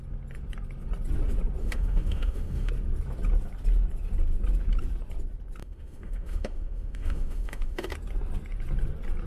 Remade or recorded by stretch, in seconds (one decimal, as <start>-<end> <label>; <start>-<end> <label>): 0.0-1.6 recorded; 1.6-2.7 remade; 2.7-5.6 recorded; 5.6-7.9 remade; 7.9-9.3 recorded